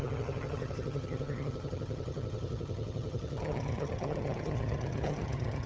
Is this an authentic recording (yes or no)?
no